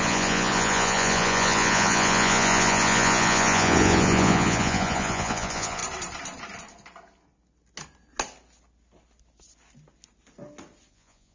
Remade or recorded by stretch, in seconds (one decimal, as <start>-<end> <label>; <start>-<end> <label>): 0.0-5.8 remade; 5.8-10.9 recorded; 10.9-11.3 remade